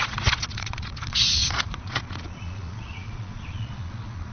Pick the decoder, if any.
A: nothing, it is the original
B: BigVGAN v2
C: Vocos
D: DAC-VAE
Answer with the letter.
C